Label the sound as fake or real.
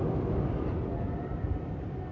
real